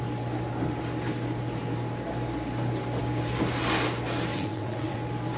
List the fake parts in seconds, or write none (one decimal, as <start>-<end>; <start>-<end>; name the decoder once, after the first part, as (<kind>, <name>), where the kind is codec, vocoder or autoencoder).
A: 4.3-5.0 (vocoder, WaveNeXt)